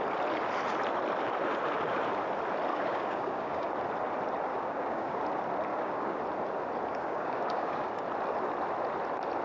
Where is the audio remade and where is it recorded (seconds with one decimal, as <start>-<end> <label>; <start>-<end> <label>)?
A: 0.0-2.7 recorded; 2.7-3.7 remade; 3.7-4.5 recorded; 4.5-5.2 remade; 5.2-5.7 recorded; 5.7-6.2 remade; 6.2-6.9 recorded; 6.9-8.0 remade; 8.0-9.4 recorded